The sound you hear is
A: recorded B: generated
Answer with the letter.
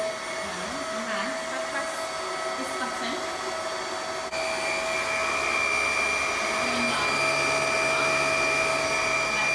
A